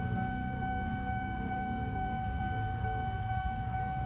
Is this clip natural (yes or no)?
no